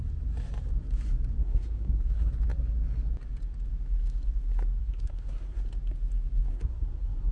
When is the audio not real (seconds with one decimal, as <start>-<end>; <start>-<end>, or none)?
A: 1.4-2.3; 4.8-5.6; 6.5-7.3